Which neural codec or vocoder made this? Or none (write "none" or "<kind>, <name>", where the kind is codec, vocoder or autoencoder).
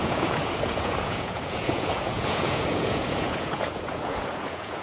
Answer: vocoder, Vocos